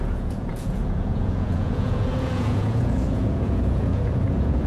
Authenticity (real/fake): fake